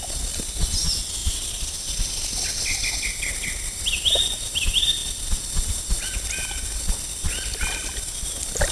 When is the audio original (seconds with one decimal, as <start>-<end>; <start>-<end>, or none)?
0.0-1.2; 2.1-8.7